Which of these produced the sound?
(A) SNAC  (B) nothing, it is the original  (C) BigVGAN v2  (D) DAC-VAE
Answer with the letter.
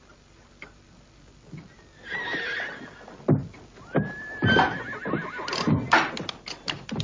B